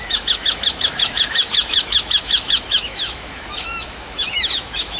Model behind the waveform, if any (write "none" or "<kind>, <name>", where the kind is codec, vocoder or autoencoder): autoencoder, DAC-VAE